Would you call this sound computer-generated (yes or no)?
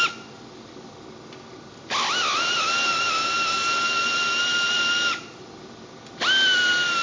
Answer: no